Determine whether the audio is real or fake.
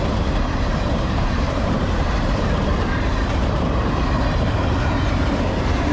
fake